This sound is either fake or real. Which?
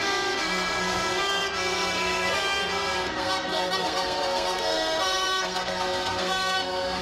fake